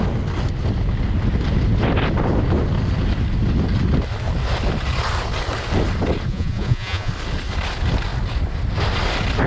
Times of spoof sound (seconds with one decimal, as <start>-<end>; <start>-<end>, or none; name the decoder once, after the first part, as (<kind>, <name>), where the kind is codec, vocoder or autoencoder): 6.3-7.1 (vocoder, Vocos)